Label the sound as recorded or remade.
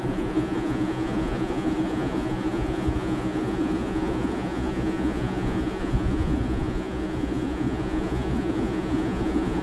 remade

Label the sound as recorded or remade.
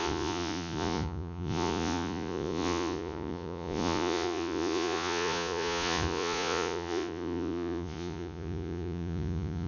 remade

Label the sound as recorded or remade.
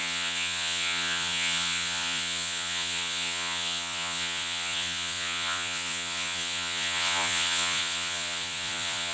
remade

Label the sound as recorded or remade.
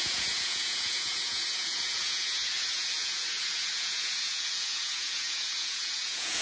remade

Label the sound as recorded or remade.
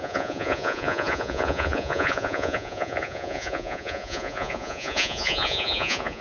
remade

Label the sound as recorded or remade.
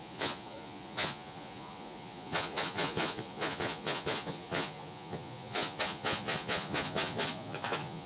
remade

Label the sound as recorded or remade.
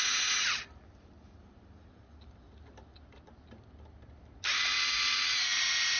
recorded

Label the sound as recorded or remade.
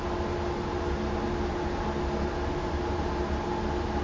recorded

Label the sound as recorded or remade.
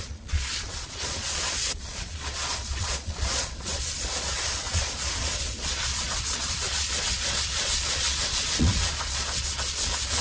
remade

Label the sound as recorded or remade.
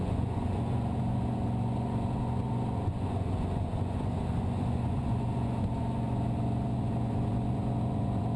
remade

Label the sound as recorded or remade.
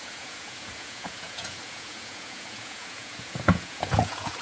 remade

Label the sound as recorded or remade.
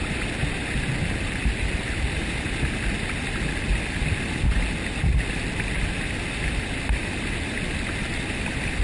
recorded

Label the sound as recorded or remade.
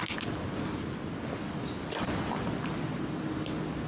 recorded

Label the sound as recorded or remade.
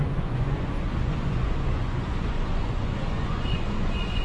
remade